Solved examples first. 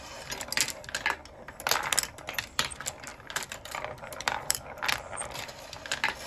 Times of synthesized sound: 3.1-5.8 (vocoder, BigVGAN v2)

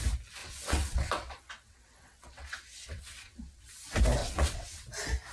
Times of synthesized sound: 0.4-3.6 (vocoder, WaveNeXt); 4.2-4.8